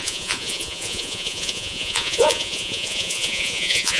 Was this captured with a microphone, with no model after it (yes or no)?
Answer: no